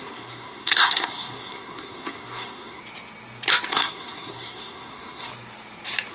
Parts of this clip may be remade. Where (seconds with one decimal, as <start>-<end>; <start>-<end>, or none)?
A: 0.0-2.8; 3.7-5.3